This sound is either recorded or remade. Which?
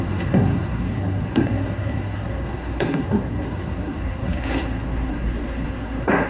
remade